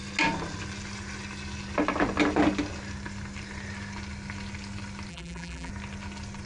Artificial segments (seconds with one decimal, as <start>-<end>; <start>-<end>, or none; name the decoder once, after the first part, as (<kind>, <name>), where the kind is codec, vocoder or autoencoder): 5.1-5.7 (vocoder, BigVGAN v2)